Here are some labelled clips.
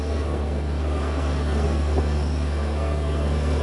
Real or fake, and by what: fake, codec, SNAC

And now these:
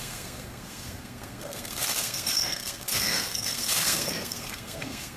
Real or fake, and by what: fake, codec, SNAC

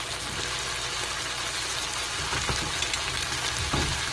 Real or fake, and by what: real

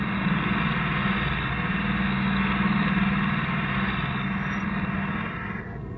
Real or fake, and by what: real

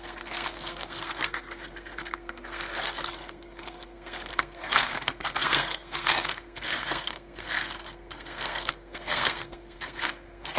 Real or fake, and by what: fake, codec, SNAC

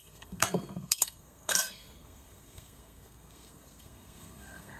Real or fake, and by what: fake, codec, SNAC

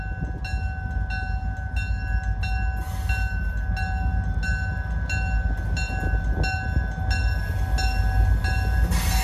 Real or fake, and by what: real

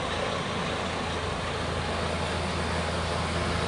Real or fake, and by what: real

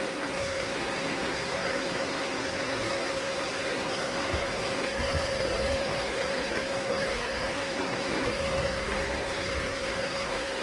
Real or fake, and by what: fake, codec, SNAC